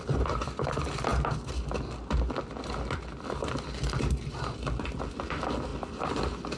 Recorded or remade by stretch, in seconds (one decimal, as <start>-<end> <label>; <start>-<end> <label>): 0.0-6.6 recorded